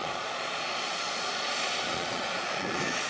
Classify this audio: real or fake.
fake